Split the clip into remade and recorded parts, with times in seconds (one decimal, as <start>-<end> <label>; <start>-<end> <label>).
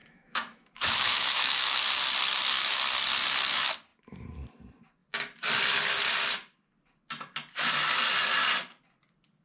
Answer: 0.0-1.8 remade; 1.8-9.4 recorded